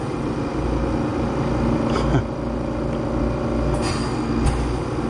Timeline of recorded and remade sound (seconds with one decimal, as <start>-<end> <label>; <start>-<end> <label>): 0.0-5.1 recorded